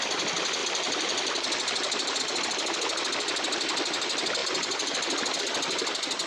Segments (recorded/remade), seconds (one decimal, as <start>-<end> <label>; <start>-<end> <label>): 0.0-0.6 recorded; 0.6-2.2 remade; 2.2-4.4 recorded; 4.4-5.4 remade; 5.4-6.3 recorded